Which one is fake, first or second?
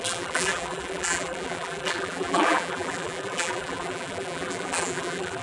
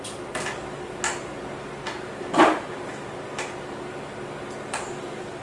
first